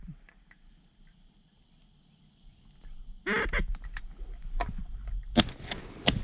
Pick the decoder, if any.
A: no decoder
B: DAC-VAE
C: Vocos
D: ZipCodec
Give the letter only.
A